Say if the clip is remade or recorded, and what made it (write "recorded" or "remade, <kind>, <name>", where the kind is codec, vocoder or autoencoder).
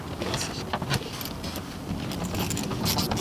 recorded